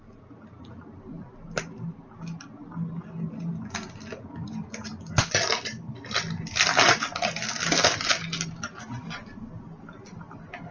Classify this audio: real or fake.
real